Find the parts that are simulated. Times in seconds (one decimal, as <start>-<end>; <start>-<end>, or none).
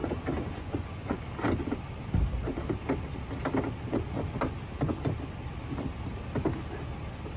0.0-1.2